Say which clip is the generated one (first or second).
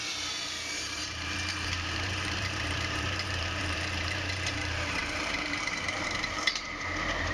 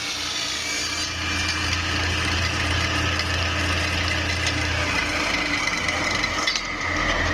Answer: first